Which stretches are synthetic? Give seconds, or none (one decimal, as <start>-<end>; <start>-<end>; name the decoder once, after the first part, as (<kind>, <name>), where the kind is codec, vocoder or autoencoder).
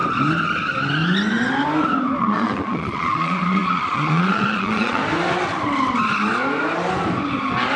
2.2-5.0 (vocoder, Vocos)